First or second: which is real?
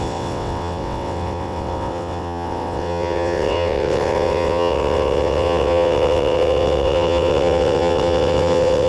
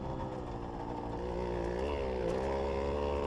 second